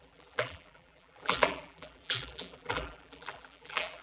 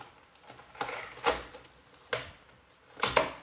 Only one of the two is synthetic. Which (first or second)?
first